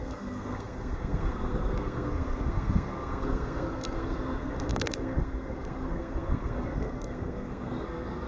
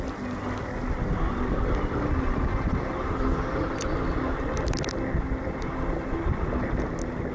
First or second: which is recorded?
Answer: second